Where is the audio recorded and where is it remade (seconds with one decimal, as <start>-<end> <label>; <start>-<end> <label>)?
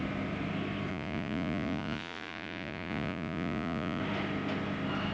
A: 0.0-0.9 recorded; 0.9-4.0 remade; 4.0-5.1 recorded